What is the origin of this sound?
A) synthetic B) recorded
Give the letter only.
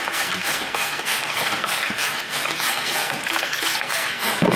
A